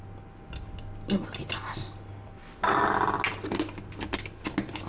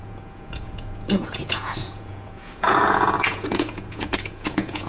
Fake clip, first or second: second